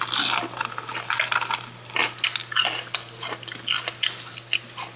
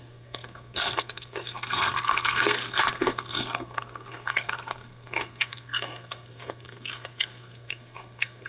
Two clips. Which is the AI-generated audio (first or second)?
second